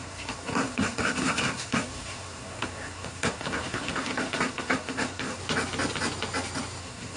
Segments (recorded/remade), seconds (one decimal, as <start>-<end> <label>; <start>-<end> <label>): 0.0-5.4 remade; 5.4-6.8 recorded; 6.8-7.2 remade